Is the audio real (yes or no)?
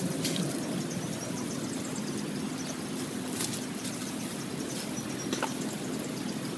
yes